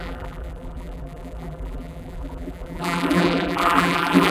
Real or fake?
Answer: fake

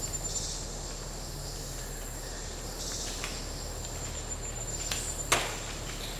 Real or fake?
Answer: real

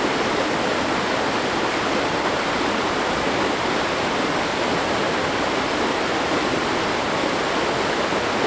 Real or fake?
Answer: real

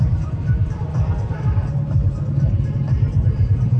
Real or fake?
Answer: fake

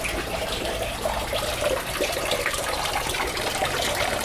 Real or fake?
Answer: fake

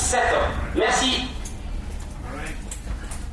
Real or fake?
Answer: real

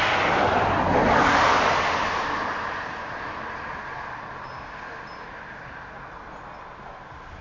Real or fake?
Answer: real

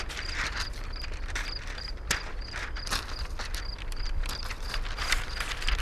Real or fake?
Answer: fake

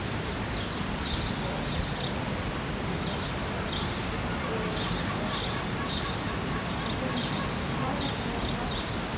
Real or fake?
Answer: real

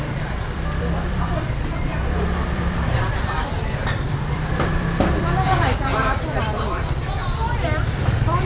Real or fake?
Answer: fake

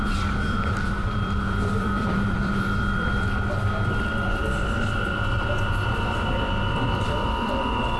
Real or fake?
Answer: fake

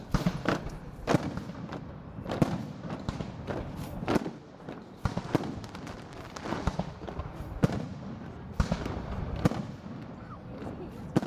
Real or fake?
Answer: fake